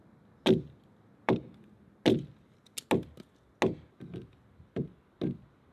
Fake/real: real